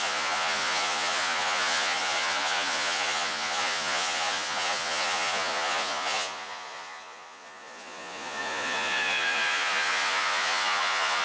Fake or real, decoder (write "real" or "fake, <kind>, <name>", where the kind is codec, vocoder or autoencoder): fake, vocoder, Vocos